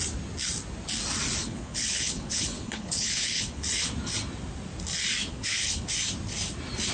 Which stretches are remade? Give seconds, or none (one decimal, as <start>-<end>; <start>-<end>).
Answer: 1.4-3.9; 5.3-5.9